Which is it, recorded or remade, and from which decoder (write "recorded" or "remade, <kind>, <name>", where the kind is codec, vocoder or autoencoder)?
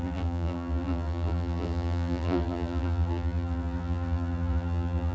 remade, vocoder, BigVGAN v2